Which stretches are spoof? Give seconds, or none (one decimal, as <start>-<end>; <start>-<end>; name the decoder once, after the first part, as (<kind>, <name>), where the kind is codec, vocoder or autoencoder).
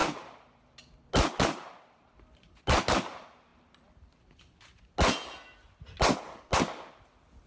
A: none